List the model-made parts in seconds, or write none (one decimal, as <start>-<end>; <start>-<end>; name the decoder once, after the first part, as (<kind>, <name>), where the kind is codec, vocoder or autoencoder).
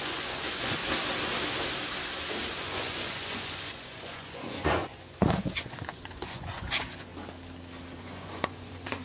0.0-0.8 (vocoder, Vocos); 2.6-7.1; 8.0-9.0